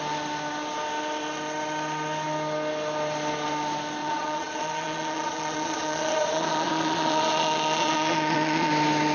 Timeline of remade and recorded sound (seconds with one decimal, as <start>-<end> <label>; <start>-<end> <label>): 0.0-4.0 recorded; 4.0-8.7 remade; 8.7-9.1 recorded